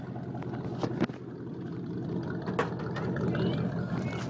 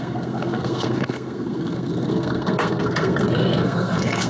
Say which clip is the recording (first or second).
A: first